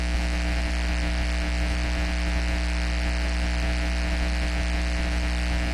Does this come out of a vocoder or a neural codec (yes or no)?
no